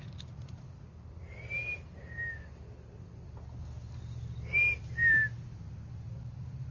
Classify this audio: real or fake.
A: real